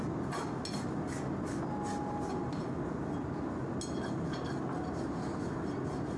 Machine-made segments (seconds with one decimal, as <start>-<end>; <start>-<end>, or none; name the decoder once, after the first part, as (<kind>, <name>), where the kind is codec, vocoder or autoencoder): none